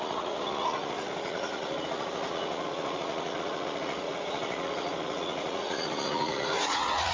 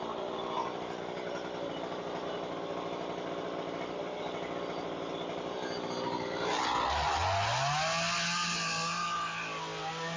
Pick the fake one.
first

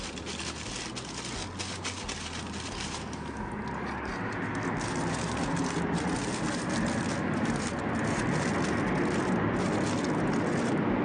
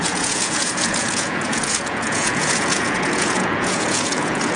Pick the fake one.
second